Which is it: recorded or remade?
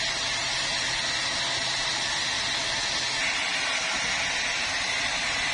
recorded